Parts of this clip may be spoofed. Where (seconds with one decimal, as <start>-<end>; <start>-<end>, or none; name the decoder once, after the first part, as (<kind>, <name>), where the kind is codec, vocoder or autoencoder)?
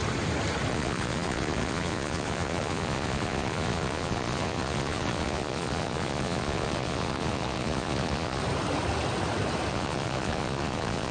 0.7-8.4 (vocoder, Vocos); 9.7-11.1